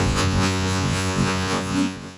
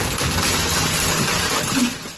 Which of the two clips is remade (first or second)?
first